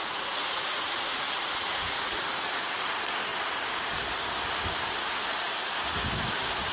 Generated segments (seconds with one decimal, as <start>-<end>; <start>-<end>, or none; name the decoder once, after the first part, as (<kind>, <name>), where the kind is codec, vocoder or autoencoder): 0.0-2.9 (vocoder, Vocos)